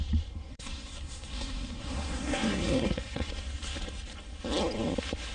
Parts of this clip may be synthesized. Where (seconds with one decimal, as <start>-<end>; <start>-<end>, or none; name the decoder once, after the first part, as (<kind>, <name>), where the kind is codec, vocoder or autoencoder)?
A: 0.5-3.3 (codec, SNAC)